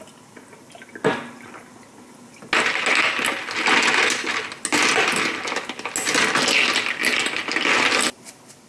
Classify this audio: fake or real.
real